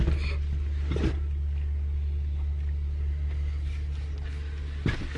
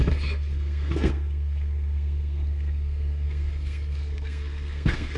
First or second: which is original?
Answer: first